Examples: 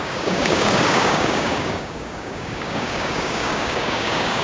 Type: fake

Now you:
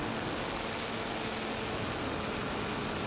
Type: real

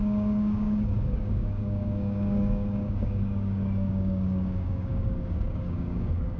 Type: fake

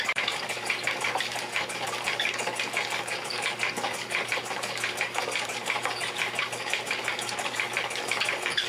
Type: fake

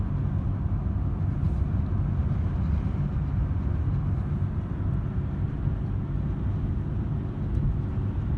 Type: real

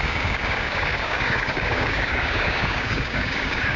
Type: fake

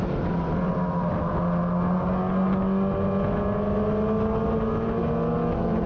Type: real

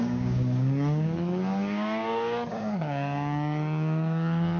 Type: fake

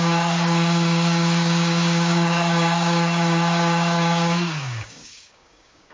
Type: fake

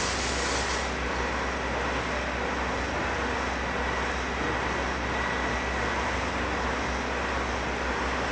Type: real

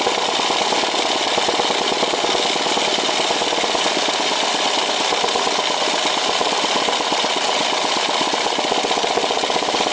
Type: real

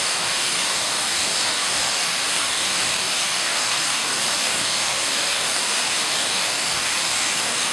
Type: fake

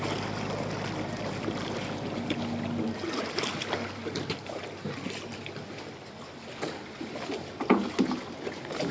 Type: real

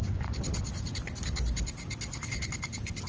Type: real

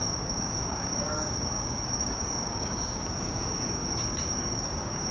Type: fake